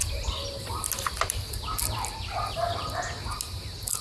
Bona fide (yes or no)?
yes